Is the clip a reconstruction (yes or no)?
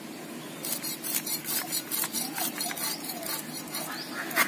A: no